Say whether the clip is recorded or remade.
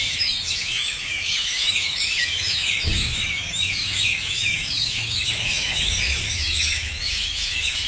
remade